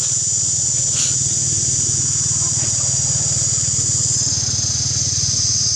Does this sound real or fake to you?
real